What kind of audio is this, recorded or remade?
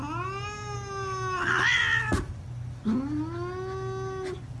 recorded